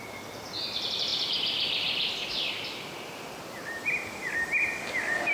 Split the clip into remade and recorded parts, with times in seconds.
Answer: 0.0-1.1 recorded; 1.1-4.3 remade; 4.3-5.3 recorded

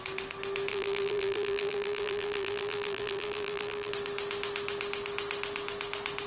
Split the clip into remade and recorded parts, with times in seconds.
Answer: 0.0-0.7 recorded; 0.7-3.9 remade; 3.9-6.3 recorded

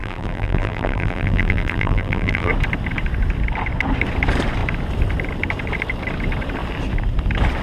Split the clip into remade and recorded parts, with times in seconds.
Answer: 0.0-2.5 remade; 2.5-7.6 recorded

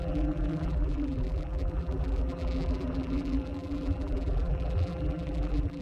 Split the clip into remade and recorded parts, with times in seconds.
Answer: 0.0-5.8 remade

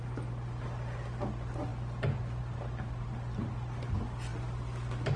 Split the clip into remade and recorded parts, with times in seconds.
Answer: 0.0-5.2 recorded

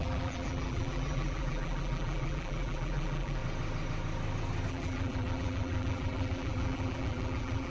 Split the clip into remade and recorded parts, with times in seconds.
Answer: 0.0-3.4 remade; 3.4-4.7 recorded; 4.7-7.7 remade